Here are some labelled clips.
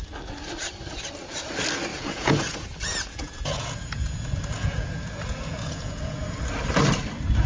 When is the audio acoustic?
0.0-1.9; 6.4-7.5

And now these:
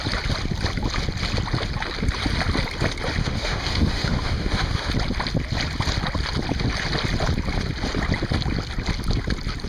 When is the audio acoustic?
0.0-3.2; 4.9-9.7

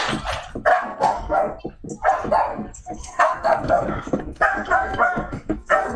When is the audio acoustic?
0.0-0.7; 1.6-2.5

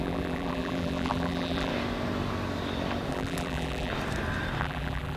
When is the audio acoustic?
1.7-3.1; 3.9-4.6

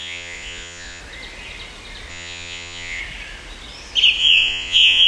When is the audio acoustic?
1.0-2.1; 3.0-4.2

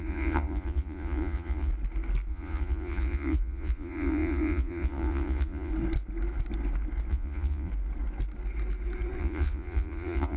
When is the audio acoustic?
1.7-2.3; 5.7-7.1; 7.7-9.2

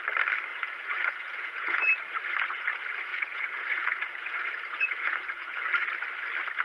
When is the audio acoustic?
0.0-0.5; 1.8-3.1; 5.6-6.6

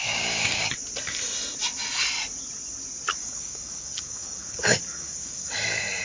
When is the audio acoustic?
0.7-3.1; 5.5-6.0